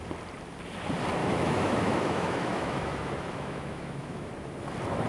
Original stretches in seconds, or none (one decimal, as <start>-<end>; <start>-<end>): 0.0-1.2; 4.3-5.1